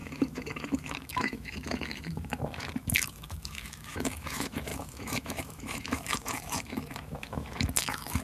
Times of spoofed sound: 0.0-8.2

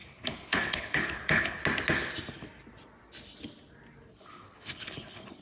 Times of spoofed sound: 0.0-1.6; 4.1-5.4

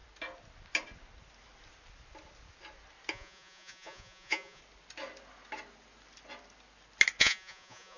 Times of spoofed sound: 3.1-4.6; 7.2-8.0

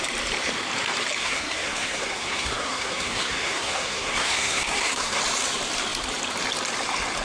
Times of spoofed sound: 1.2-5.2

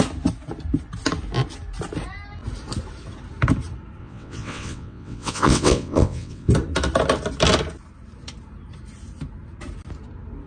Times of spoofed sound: 4.0-6.5